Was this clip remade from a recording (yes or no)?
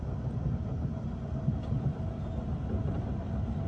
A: yes